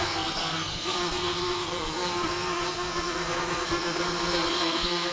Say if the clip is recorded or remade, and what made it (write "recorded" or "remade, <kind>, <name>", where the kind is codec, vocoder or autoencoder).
remade, codec, SNAC